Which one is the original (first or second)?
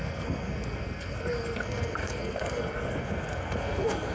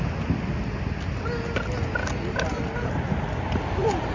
second